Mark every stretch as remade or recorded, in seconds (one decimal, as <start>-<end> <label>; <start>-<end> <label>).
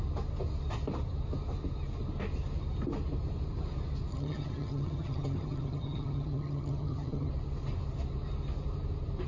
0.0-4.1 recorded; 4.1-7.3 remade; 7.3-9.3 recorded